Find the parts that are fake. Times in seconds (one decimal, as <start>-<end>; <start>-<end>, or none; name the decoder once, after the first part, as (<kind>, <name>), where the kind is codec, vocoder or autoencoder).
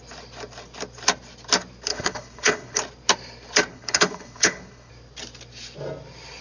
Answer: 1.9-2.8 (codec, HILCodec); 3.7-4.9